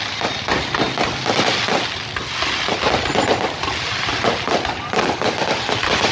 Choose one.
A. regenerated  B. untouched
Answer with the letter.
B